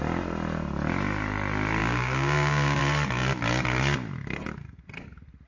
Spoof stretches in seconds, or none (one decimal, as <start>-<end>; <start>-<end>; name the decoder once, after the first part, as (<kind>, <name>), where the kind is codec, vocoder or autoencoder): 1.8-2.8 (codec, DAC)